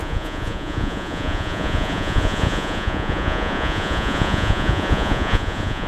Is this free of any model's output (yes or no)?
no